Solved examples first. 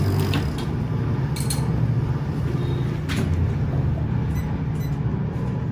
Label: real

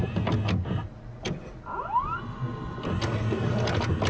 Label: real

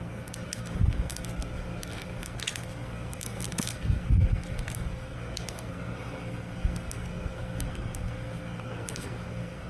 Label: fake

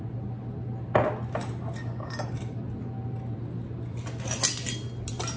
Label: real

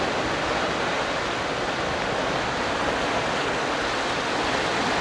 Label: real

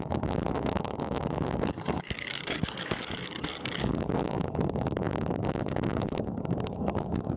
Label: fake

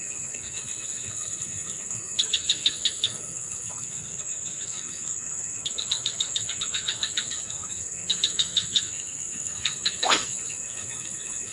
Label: fake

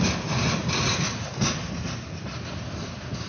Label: real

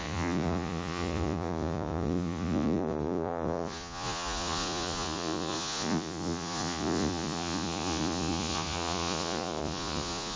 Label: fake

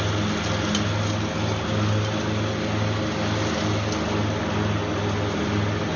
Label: real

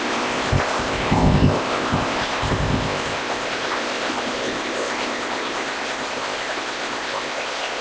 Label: fake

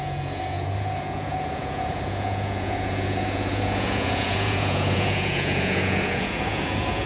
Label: fake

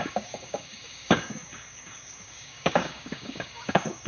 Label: fake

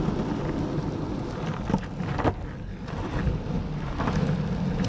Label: real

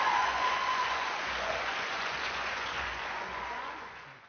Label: fake